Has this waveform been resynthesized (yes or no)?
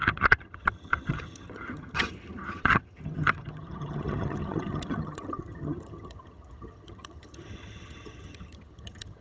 yes